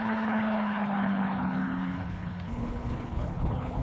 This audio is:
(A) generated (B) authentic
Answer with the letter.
A